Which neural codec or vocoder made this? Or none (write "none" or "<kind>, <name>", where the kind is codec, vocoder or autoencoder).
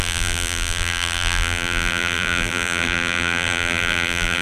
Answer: vocoder, BigVGAN v2